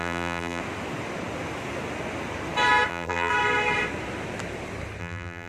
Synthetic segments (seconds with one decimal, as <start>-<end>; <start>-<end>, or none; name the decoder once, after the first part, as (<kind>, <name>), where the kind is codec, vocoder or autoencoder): 0.0-0.6 (vocoder, BigVGAN v2); 2.9-3.3; 5.0-5.5